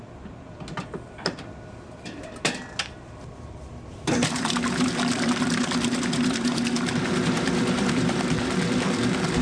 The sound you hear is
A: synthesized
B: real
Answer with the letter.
A